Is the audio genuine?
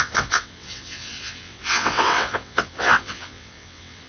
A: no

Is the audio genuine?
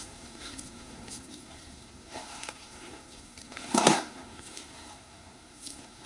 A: no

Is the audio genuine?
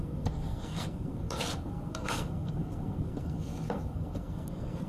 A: no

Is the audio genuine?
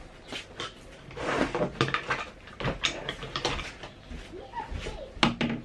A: yes